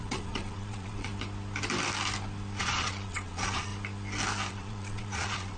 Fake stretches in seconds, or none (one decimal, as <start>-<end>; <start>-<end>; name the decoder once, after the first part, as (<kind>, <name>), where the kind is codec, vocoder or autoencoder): 0.0-1.1 (vocoder, Vocos); 2.6-3.7; 4.5-5.6